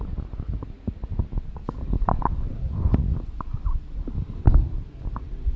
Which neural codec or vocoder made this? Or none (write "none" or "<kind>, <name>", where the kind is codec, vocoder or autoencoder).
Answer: none